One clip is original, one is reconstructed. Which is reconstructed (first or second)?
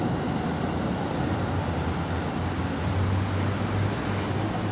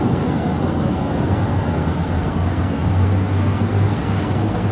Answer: second